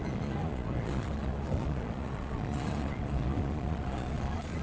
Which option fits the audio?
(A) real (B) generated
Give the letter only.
B